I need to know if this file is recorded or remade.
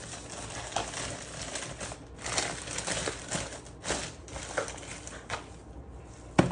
recorded